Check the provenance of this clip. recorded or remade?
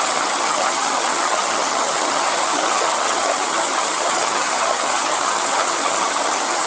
remade